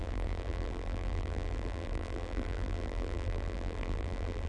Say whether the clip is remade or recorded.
remade